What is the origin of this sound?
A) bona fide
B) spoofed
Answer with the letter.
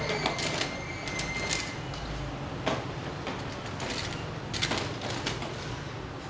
A